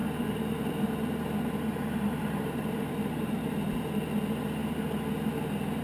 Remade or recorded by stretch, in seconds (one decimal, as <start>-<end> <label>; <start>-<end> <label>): 0.0-3.5 remade; 3.5-5.8 recorded